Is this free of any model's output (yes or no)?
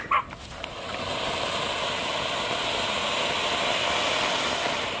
yes